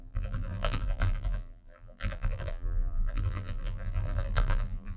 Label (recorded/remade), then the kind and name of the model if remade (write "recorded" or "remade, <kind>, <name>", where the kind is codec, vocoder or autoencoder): remade, vocoder, BigVGAN v2